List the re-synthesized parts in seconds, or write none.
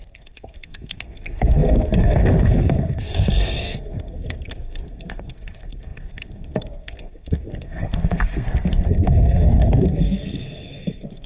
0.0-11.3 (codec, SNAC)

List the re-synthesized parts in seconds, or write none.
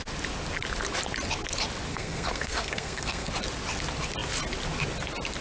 1.9-3.3 (codec, SNAC)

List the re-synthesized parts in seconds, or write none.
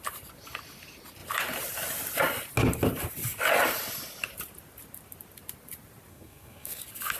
6.1-6.8 (codec, SNAC)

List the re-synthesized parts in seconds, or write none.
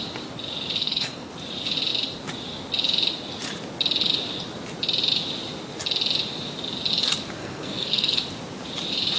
0.8-1.3 (codec, SNAC); 7.4-8.2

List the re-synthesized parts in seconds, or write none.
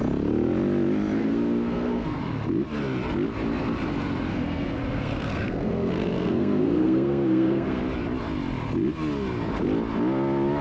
1.2-2.2 (codec, SNAC); 4.3-7.8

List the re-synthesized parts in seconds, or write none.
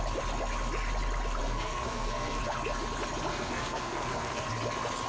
1.4-2.4 (codec, SNAC); 3.3-4.5